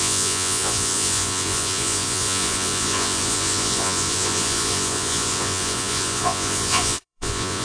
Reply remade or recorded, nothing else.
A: remade